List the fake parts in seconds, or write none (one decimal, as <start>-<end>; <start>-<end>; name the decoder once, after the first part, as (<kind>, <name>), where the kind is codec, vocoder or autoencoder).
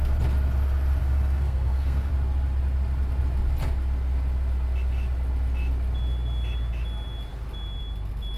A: 1.0-2.1 (codec, SNAC)